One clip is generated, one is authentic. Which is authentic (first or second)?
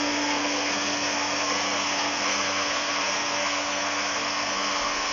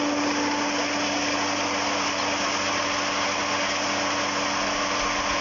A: second